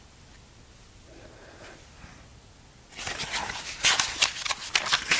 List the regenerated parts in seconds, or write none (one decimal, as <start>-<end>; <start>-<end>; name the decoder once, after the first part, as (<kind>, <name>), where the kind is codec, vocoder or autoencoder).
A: none